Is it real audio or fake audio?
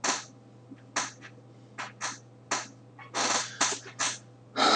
real